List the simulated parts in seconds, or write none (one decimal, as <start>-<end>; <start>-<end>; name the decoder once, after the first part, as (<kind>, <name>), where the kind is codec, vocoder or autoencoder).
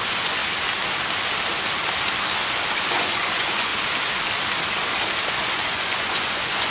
0.0-0.4 (vocoder, Vocos); 2.9-3.7; 5.3-6.7